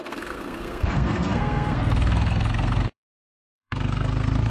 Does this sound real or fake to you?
fake